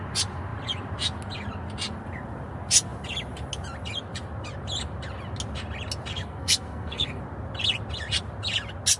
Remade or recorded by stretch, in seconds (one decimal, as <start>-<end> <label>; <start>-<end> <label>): 0.0-6.1 recorded; 6.1-7.2 remade; 7.2-9.0 recorded

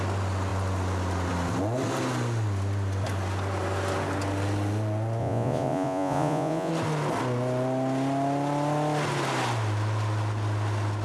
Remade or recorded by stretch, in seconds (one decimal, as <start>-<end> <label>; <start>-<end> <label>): 0.0-5.2 recorded; 5.2-6.7 remade; 6.7-11.0 recorded

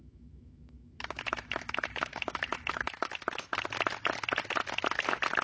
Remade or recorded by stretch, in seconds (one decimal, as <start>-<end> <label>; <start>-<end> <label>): 0.0-3.2 remade; 3.2-5.4 recorded

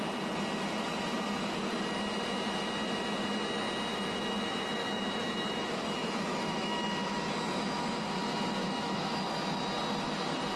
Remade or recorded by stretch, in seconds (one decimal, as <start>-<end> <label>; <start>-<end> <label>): 0.0-3.9 recorded; 3.9-7.3 remade; 7.3-8.6 recorded; 8.6-9.3 remade; 9.3-10.6 recorded

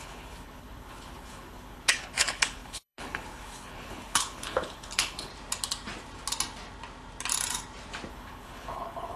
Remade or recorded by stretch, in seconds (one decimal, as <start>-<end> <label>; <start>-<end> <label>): 0.0-5.3 remade; 5.3-8.1 recorded; 8.1-9.2 remade